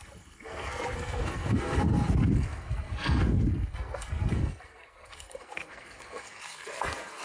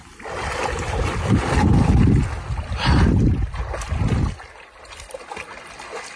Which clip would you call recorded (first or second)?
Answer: second